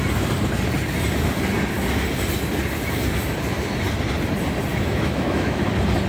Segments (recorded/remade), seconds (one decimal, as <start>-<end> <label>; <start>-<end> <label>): 0.0-4.7 recorded; 4.7-5.6 remade; 5.6-6.1 recorded